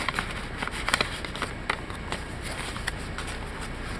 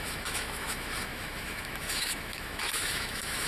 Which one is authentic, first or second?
first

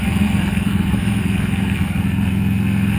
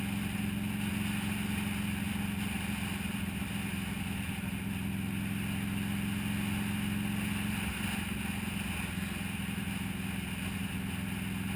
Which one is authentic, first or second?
second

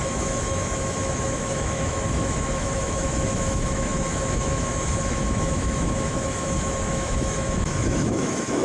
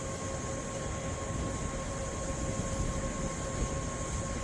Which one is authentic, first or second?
second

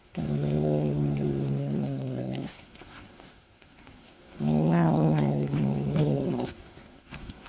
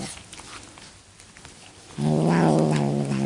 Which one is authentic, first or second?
second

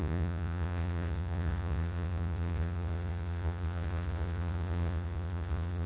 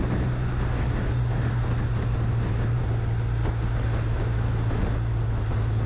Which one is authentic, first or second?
second